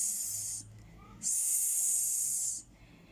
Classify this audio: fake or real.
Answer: real